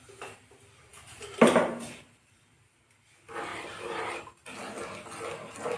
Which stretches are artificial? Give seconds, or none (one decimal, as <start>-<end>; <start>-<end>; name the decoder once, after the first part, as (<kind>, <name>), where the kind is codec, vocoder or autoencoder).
0.9-2.7 (vocoder, BigVGAN v2); 3.5-4.2

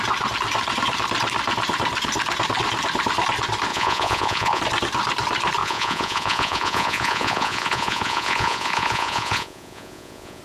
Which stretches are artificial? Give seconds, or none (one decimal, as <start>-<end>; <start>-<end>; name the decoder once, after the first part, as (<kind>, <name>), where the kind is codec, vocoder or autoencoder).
3.7-4.6 (vocoder, Vocos); 5.6-10.4

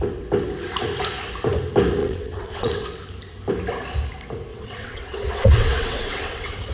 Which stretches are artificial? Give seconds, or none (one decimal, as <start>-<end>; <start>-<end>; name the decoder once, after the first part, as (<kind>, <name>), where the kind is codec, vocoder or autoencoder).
2.0-3.0 (vocoder, WaveNeXt); 4.5-6.7